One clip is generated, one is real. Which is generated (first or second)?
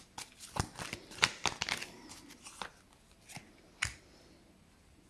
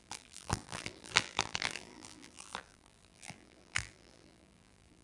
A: second